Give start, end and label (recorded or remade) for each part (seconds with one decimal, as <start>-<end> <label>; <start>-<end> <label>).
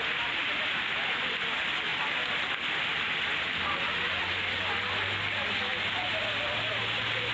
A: 0.0-7.3 recorded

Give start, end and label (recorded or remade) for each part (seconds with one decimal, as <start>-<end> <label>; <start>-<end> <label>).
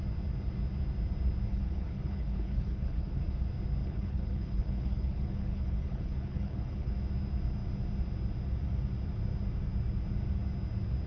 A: 0.0-1.5 recorded; 1.5-3.2 remade; 3.2-3.8 recorded; 3.8-6.9 remade; 6.9-11.1 recorded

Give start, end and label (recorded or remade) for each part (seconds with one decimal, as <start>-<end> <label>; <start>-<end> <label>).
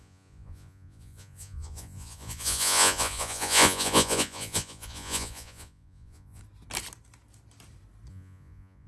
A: 0.0-6.4 remade; 6.4-8.1 recorded; 8.1-8.9 remade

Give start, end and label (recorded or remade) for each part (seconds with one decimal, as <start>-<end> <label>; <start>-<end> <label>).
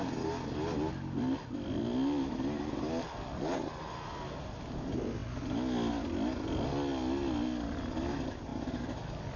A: 0.0-9.4 recorded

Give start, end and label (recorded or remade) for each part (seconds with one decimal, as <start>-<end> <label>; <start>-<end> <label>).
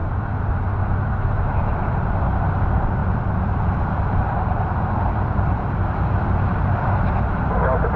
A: 0.0-8.0 remade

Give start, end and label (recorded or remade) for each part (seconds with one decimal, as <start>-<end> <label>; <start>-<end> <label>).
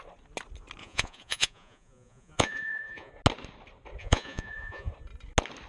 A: 0.0-0.8 recorded; 0.8-3.1 remade; 3.1-4.0 recorded; 4.0-4.9 remade; 4.9-5.7 recorded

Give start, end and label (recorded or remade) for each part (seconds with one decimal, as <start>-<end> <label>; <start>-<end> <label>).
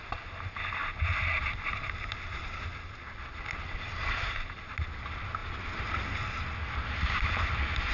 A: 0.0-7.9 recorded